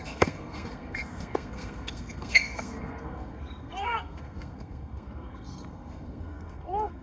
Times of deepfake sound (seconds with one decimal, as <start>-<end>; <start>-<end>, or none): 0.0-7.0